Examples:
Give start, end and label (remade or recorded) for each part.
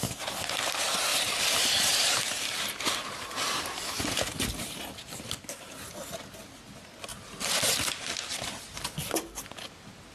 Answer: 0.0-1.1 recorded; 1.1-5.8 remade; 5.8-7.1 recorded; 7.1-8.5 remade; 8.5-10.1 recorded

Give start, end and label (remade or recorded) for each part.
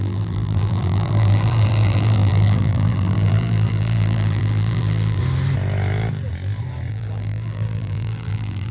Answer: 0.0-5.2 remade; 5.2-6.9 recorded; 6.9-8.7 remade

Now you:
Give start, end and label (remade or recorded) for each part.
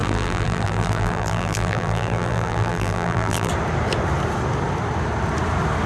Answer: 0.0-3.5 remade; 3.5-5.9 recorded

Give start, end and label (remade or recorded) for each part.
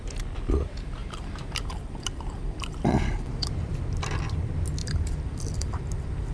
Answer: 0.0-1.0 recorded; 1.0-3.5 remade; 3.5-4.8 recorded; 4.8-6.3 remade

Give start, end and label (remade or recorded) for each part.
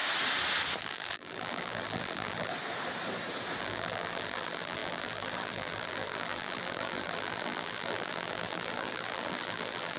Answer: 0.0-0.8 recorded; 0.8-2.5 remade; 2.5-3.6 recorded; 3.6-10.0 remade